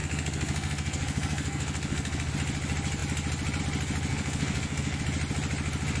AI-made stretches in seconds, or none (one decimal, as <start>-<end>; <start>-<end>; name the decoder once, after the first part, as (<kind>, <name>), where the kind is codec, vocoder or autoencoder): 0.0-2.3 (codec, SNAC); 4.1-5.0